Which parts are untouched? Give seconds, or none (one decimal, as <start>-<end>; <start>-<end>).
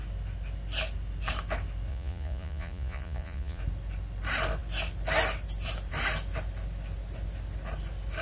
0.0-1.9; 3.6-8.2